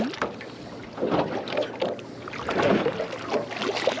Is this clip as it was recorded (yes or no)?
yes